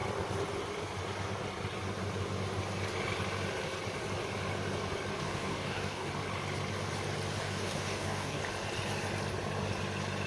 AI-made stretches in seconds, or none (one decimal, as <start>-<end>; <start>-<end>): 5.1-6.1; 7.4-8.4